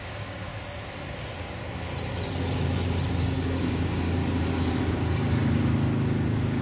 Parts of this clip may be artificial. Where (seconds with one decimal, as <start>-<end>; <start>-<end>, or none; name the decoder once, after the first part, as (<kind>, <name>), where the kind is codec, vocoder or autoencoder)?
0.0-0.5 (codec, DAC); 3.2-4.2; 4.9-6.6

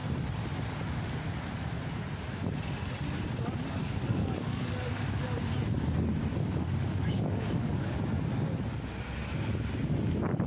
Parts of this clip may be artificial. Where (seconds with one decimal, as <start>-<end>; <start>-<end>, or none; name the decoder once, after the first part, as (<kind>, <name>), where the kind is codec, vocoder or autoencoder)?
3.8-4.6 (codec, DAC); 6.3-8.0